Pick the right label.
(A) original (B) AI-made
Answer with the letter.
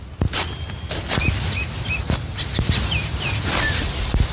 A